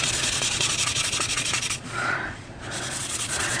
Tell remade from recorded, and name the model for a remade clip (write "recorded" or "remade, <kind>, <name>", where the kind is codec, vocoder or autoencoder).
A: remade, vocoder, Vocos